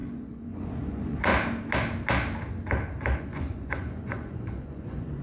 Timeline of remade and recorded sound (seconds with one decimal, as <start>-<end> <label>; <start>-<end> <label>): 0.0-1.3 remade; 1.3-3.2 recorded; 3.2-5.2 remade

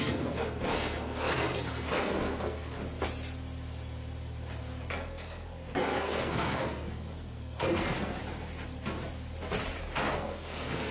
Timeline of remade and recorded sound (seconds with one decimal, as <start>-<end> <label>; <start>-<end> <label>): 0.0-2.8 remade; 2.8-4.9 recorded; 4.9-8.2 remade; 8.2-10.1 recorded; 10.1-10.9 remade